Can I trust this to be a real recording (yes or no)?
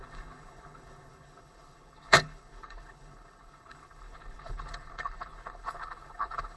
no